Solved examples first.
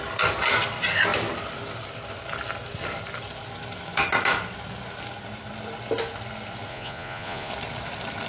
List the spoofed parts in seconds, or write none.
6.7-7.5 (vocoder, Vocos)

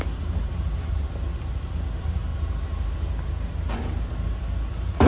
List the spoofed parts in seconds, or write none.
none

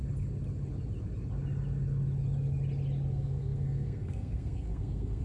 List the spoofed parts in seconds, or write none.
3.1-5.2 (codec, SNAC)

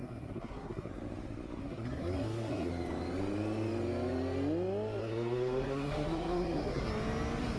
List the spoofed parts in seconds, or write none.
0.0-0.9 (codec, SNAC); 1.6-2.7; 5.0-6.9

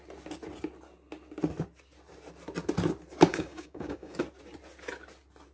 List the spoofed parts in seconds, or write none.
3.3-4.2 (codec, DAC)